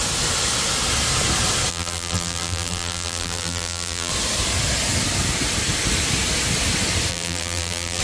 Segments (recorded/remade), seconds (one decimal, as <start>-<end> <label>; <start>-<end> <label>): 0.0-1.7 recorded; 1.7-4.1 remade; 4.1-7.1 recorded; 7.1-8.0 remade